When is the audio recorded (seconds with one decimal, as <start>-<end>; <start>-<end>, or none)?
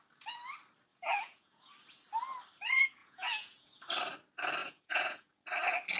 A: 0.0-0.9; 1.7-3.0; 3.8-4.6; 5.3-6.0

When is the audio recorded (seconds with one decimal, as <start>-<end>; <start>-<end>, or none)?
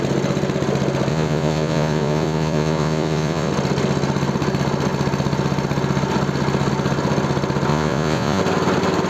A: 0.0-1.1; 3.5-7.7; 8.4-9.1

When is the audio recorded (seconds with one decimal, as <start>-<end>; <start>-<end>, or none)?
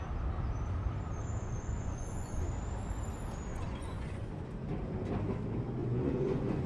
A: 0.0-1.4; 2.5-3.5; 4.3-5.8